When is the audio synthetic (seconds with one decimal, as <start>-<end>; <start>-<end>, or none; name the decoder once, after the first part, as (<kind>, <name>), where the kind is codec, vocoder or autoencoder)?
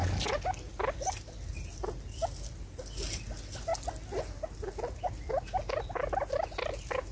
none